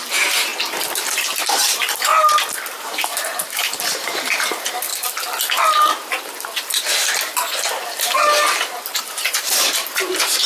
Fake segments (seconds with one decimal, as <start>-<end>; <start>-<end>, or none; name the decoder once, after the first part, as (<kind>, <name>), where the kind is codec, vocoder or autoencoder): 0.0-0.5 (vocoder, BigVGAN v2); 1.4-2.1; 2.7-4.9; 9.0-10.5